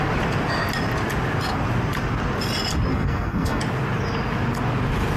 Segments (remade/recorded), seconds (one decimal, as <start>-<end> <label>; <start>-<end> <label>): 0.0-2.9 recorded; 2.9-3.6 remade; 3.6-5.2 recorded